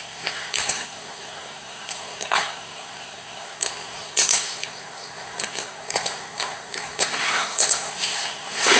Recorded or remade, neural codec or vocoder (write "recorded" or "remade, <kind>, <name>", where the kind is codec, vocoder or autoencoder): remade, codec, SNAC